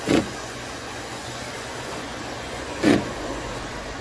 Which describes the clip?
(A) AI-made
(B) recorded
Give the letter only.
A